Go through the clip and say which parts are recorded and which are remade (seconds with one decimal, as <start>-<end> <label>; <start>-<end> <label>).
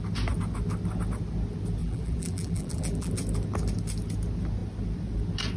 0.0-1.8 recorded; 1.8-3.1 remade; 3.1-5.6 recorded